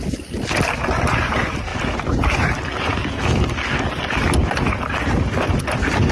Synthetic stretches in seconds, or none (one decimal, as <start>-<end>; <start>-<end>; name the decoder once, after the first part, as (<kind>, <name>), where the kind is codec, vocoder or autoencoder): none